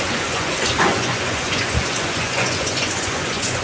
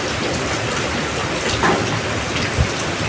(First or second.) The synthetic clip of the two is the first